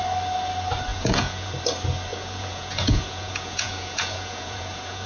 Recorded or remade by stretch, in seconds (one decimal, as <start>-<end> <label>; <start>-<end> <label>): 0.0-0.9 recorded; 0.9-1.5 remade; 1.5-2.1 recorded; 2.1-5.1 remade